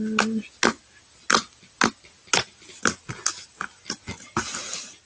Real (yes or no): yes